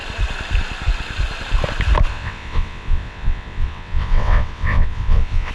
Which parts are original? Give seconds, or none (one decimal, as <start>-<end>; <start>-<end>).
0.0-2.1